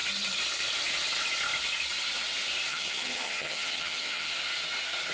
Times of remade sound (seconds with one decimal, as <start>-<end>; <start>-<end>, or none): 2.7-4.4